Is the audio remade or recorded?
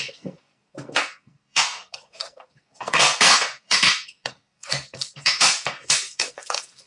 remade